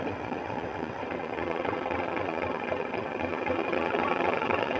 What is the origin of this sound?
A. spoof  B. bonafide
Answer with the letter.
A